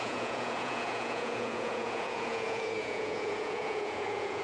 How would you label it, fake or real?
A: fake